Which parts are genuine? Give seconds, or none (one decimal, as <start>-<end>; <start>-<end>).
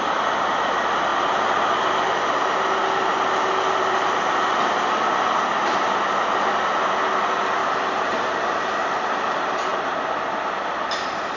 0.0-11.4